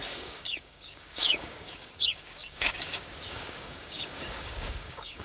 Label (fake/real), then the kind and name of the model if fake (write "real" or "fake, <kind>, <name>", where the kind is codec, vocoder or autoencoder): fake, codec, DAC